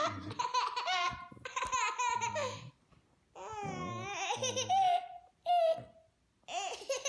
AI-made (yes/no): no